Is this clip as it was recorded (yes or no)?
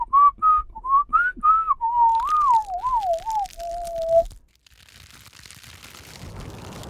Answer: yes